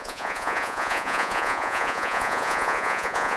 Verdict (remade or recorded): remade